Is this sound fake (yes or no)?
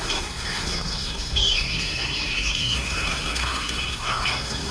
yes